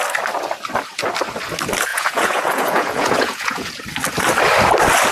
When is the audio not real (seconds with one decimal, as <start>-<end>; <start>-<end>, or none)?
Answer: 1.9-3.8